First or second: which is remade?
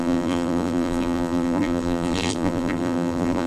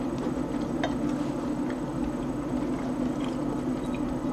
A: first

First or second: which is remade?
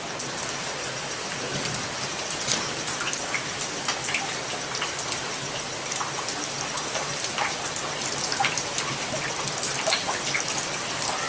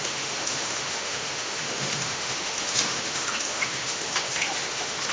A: second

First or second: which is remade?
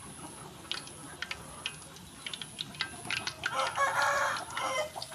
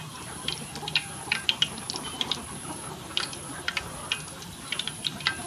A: second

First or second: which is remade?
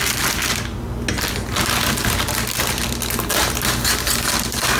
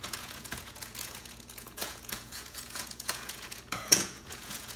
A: second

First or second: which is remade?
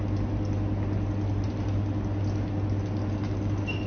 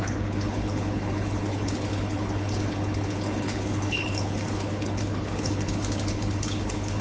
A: second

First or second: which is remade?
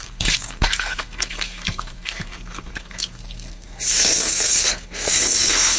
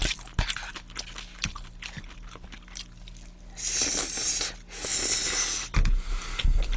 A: first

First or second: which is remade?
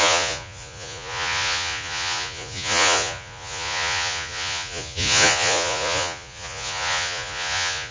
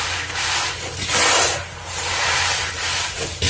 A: first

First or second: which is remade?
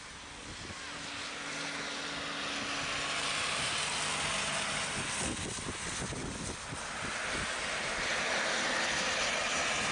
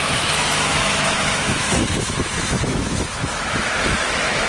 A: second